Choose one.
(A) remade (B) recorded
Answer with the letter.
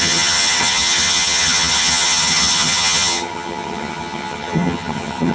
A